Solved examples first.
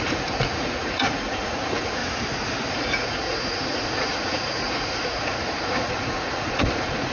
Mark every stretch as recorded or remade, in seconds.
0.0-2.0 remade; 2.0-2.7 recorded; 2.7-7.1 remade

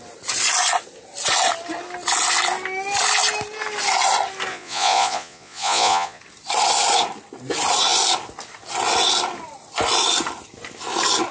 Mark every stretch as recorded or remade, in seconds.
0.0-4.5 recorded; 4.5-6.2 remade; 6.2-11.3 recorded

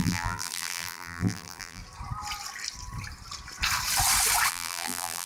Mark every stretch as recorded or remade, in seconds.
0.0-1.8 remade; 1.8-4.5 recorded; 4.5-5.3 remade

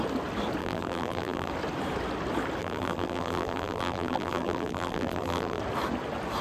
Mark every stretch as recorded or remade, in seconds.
0.0-0.6 recorded; 0.6-1.5 remade; 1.5-2.6 recorded; 2.6-5.6 remade; 5.6-6.4 recorded

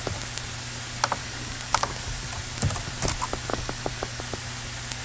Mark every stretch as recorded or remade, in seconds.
0.0-1.2 recorded; 1.2-2.3 remade; 2.3-3.5 recorded; 3.5-4.2 remade; 4.2-5.0 recorded

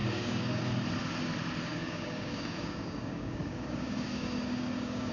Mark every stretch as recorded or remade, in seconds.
0.0-0.6 remade; 0.6-1.7 recorded; 1.7-5.1 remade

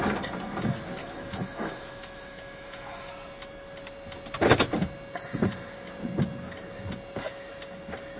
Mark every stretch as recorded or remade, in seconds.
0.0-1.0 recorded; 1.0-3.1 remade; 3.1-8.2 recorded

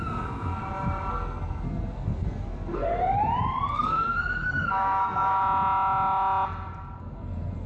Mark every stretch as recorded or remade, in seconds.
0.0-0.6 remade; 0.6-1.1 recorded; 1.1-2.9 remade; 2.9-3.7 recorded; 3.7-5.4 remade; 5.4-7.0 recorded; 7.0-7.7 remade